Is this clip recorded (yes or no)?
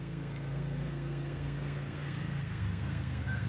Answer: no